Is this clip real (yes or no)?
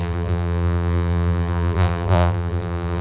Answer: no